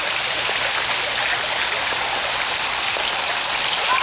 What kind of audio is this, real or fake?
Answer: real